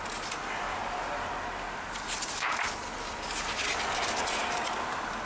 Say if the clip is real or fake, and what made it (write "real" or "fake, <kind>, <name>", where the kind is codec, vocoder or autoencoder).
real